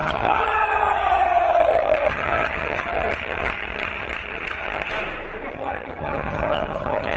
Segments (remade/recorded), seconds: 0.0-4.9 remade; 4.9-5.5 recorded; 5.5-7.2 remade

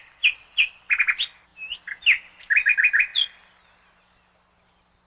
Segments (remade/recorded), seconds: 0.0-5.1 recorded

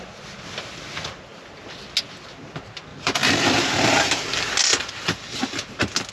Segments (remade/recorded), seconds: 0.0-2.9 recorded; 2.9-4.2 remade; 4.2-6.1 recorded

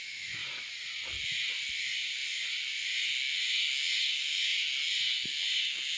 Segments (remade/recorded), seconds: 0.0-0.4 remade; 0.4-4.0 recorded; 4.0-4.5 remade; 4.5-5.6 recorded; 5.6-6.0 remade